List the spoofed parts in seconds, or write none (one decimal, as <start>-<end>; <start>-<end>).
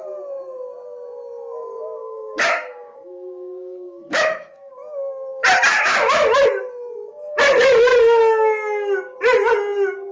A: 2.0-4.7; 5.7-6.4